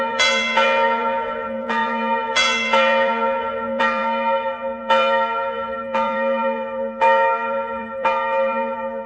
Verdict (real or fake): fake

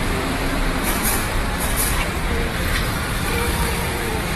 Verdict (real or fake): fake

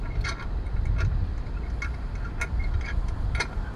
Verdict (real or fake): real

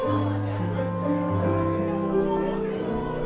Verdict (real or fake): real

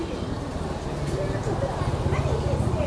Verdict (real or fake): real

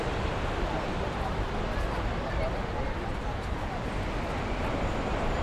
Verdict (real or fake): real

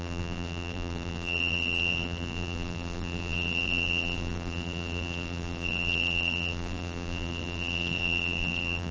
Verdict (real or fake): fake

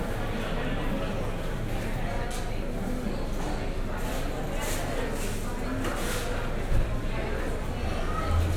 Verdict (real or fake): real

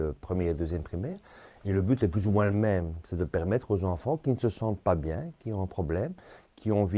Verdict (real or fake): fake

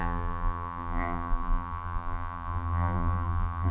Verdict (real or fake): fake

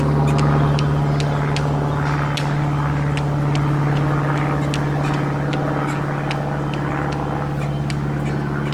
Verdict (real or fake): real